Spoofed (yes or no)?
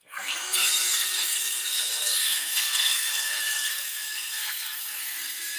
yes